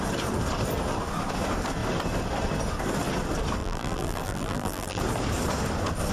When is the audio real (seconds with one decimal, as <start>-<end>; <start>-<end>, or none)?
0.0-3.6; 5.0-6.1